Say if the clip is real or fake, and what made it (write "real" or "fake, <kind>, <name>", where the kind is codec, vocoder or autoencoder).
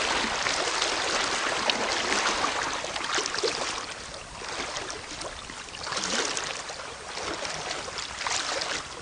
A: real